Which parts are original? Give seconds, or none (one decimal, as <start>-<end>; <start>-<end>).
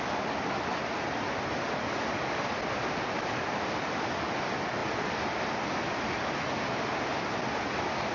0.0-8.1